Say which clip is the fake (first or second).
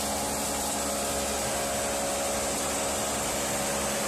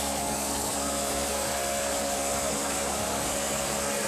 second